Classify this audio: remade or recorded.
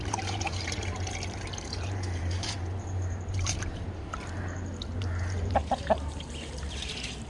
remade